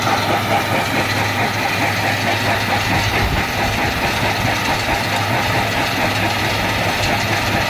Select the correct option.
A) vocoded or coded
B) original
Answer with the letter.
B